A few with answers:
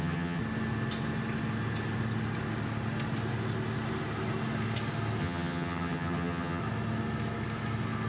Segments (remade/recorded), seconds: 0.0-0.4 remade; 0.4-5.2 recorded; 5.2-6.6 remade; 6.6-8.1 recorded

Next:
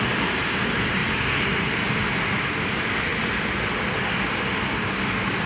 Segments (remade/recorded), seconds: 0.0-5.5 recorded

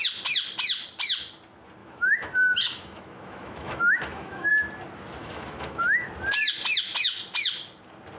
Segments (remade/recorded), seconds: 0.0-1.8 recorded; 1.8-4.5 remade; 4.5-5.2 recorded; 5.2-6.1 remade; 6.1-8.2 recorded

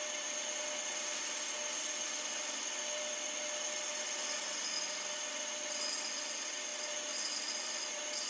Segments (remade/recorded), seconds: 0.0-8.3 recorded

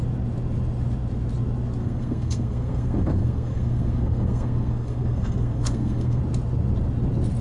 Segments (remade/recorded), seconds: 0.0-1.8 recorded; 1.8-6.2 remade; 6.2-7.4 recorded

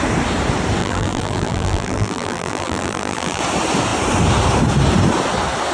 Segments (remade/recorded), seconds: 0.0-0.8 recorded; 0.8-3.4 remade; 3.4-5.7 recorded

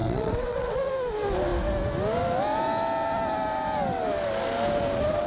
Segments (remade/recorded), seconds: 0.0-0.9 remade; 0.9-5.3 recorded

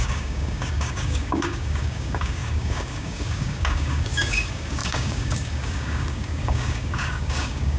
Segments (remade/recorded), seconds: 0.0-7.8 remade